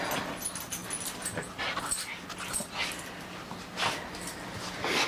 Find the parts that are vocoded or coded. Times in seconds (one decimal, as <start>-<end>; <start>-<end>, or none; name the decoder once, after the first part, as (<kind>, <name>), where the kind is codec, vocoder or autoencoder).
none